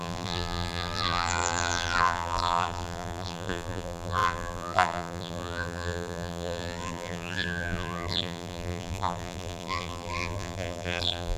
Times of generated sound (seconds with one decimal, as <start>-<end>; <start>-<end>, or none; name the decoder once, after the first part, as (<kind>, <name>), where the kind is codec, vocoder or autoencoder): 0.0-11.4 (vocoder, BigVGAN v2)